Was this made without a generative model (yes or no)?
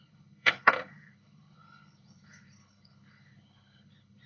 no